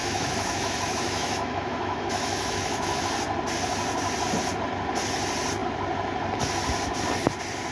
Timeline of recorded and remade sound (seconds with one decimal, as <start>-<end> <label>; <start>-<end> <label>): 0.0-3.0 remade; 3.0-7.7 recorded